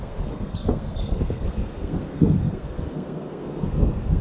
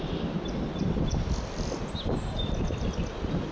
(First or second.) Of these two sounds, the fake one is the first